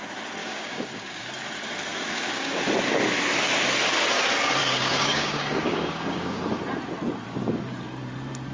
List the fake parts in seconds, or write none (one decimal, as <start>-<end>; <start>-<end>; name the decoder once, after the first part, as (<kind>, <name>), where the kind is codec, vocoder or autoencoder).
0.4-1.3 (codec, DAC); 1.9-2.6; 4.6-6.4